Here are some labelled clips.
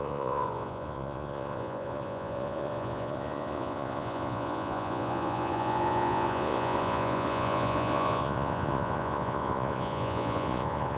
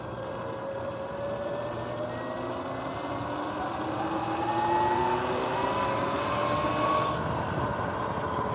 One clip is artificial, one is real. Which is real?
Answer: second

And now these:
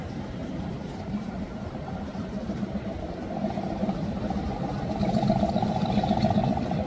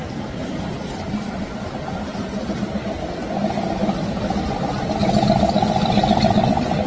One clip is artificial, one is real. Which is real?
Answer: second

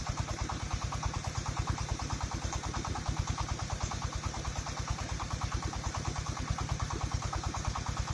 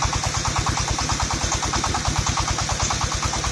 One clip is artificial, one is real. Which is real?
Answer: second